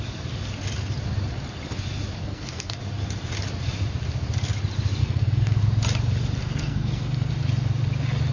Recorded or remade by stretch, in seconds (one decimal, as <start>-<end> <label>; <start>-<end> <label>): 0.0-2.2 recorded; 2.2-2.8 remade; 2.8-5.0 recorded; 5.0-5.6 remade; 5.6-6.4 recorded; 6.4-7.3 remade; 7.3-8.3 recorded